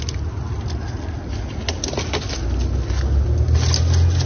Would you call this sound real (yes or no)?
yes